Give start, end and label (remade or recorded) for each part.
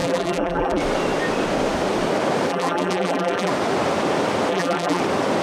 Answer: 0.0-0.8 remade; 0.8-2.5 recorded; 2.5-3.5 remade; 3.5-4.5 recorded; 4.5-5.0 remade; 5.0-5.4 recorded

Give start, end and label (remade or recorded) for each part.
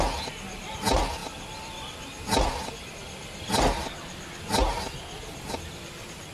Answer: 0.0-1.2 recorded; 1.2-2.9 remade; 2.9-6.3 recorded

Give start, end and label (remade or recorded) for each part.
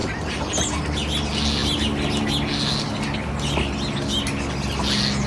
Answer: 0.0-5.3 recorded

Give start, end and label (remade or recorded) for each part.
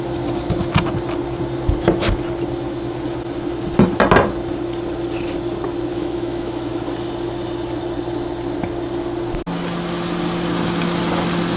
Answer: 0.0-5.9 recorded; 5.9-6.7 remade; 6.7-11.6 recorded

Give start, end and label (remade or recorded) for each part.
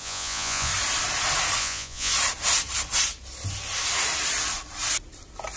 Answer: 0.0-0.7 remade; 0.7-1.6 recorded; 1.6-2.1 remade; 2.1-5.6 recorded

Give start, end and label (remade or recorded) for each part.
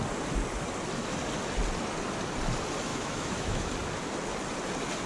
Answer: 0.0-2.9 recorded; 2.9-3.7 remade; 3.7-5.1 recorded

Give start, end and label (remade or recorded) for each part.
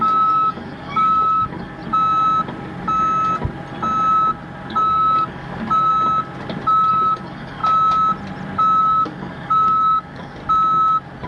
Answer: 0.0-1.8 remade; 1.8-4.7 recorded; 4.7-5.9 remade; 5.9-6.9 recorded; 6.9-7.6 remade; 7.6-8.8 recorded; 8.8-10.4 remade; 10.4-11.3 recorded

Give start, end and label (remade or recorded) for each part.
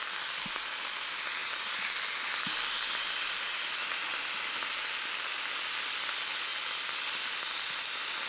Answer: 0.0-8.3 recorded